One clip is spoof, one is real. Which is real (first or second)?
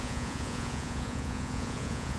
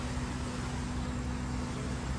second